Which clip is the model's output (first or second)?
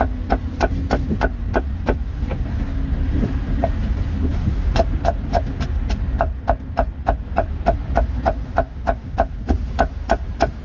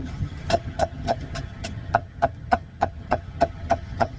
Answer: second